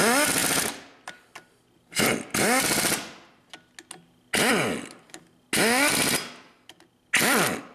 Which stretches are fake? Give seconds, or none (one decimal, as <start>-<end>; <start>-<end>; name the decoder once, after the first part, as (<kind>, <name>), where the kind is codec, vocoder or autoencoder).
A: none